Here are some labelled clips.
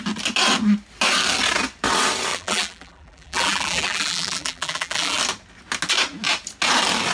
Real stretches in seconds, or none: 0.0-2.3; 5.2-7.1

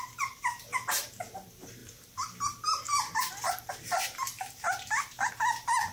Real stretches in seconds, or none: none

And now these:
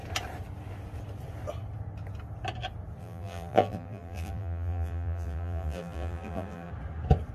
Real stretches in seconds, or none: 0.0-3.0; 6.7-7.3

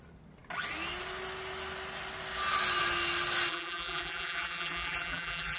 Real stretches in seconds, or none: 0.0-3.5